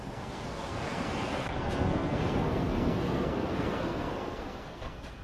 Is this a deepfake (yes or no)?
yes